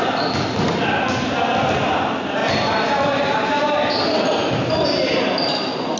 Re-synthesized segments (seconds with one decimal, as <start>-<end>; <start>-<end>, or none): none